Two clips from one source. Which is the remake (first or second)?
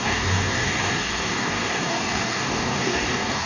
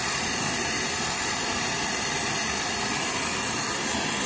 first